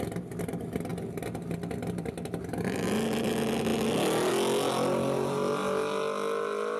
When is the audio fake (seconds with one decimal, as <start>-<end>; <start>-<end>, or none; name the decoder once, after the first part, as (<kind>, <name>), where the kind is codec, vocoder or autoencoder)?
none